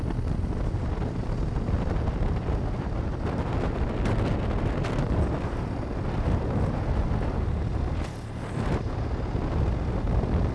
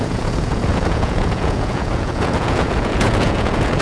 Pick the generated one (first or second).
second